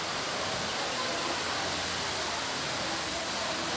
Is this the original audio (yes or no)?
yes